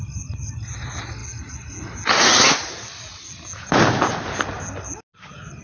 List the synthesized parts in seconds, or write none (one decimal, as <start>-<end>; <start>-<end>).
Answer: none